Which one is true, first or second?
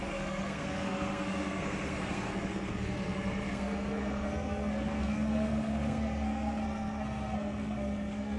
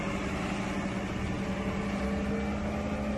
second